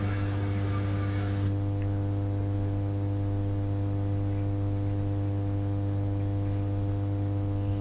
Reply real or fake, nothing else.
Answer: real